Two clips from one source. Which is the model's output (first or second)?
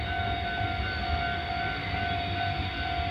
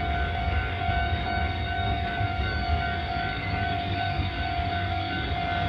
second